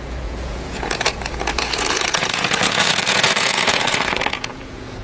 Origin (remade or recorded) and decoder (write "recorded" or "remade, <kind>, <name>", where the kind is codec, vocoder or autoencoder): remade, vocoder, Vocos